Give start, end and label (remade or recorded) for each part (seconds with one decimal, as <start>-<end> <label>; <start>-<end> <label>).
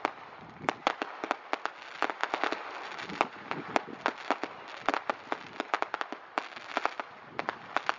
0.0-8.0 recorded